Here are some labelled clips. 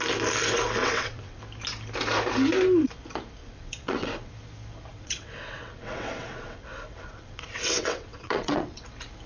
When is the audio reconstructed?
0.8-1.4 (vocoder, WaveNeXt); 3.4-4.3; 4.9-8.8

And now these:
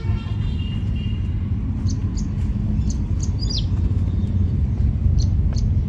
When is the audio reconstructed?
none